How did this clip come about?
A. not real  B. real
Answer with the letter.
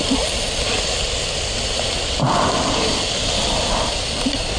B